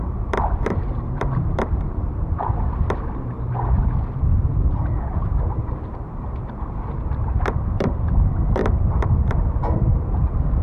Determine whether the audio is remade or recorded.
remade